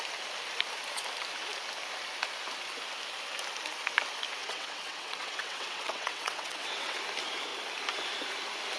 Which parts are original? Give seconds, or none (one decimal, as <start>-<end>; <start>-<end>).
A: 0.0-4.4; 7.0-8.8